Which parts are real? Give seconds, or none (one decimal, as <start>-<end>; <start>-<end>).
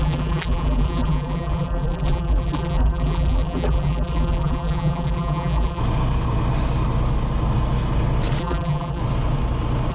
5.8-8.4; 9.0-9.9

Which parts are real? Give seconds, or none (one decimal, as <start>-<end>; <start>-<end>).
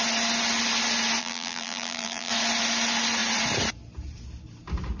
0.0-1.2; 2.3-5.0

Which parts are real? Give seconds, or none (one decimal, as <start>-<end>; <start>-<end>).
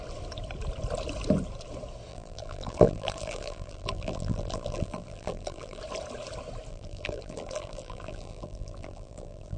0.0-2.1; 5.8-6.7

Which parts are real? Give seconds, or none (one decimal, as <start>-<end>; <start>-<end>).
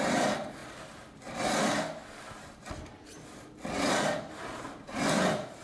0.0-5.6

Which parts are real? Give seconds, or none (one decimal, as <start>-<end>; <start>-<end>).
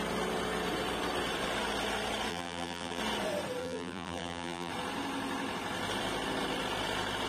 0.0-2.3; 3.0-3.6; 4.7-7.3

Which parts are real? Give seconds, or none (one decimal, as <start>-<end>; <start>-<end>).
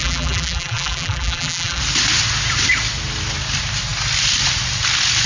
1.8-5.3